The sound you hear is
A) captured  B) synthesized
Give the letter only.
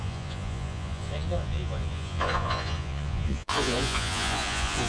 B